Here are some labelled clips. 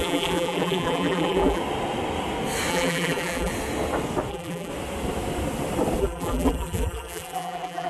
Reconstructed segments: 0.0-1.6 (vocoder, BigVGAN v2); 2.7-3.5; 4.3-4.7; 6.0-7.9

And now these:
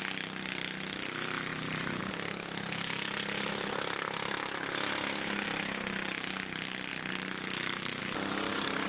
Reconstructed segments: 1.5-2.0 (vocoder, BigVGAN v2)

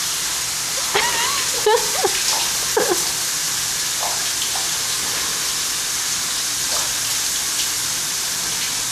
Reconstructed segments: 0.8-2.4 (vocoder, BigVGAN v2); 7.1-8.9

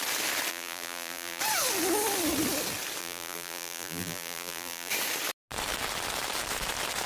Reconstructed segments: 0.5-1.4 (vocoder, BigVGAN v2); 3.0-4.9

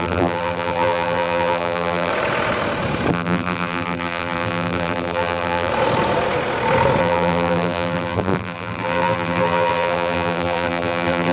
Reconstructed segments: 0.0-2.1 (vocoder, BigVGAN v2); 3.1-5.7; 7.0-11.3